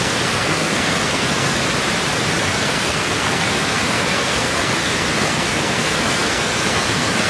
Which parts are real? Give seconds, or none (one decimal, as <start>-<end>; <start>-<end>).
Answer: 1.6-2.4